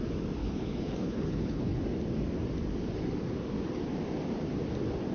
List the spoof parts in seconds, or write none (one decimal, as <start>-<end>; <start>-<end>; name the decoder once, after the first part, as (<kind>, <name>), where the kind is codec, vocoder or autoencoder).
0.4-1.8 (codec, HILCodec)